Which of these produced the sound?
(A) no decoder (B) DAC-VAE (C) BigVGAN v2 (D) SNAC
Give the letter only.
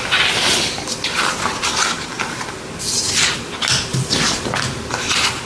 A